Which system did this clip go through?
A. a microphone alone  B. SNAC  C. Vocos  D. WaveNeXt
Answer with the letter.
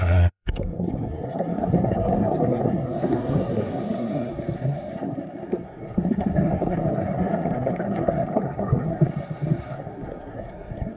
B